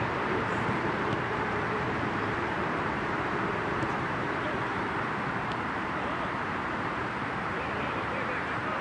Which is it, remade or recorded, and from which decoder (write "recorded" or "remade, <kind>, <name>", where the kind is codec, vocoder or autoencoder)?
remade, vocoder, BigVGAN v2